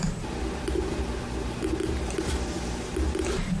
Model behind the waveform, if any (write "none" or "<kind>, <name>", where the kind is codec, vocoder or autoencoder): none